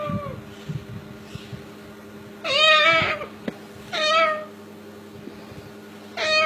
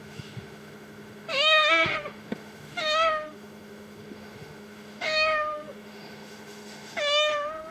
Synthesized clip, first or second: second